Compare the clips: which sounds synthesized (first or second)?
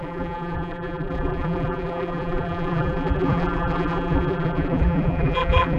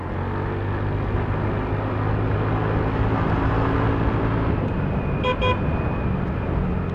first